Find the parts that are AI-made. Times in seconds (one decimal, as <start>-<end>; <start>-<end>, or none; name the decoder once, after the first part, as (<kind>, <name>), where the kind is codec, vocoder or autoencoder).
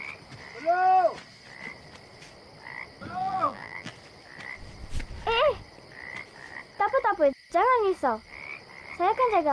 3.2-3.9 (vocoder, BigVGAN v2)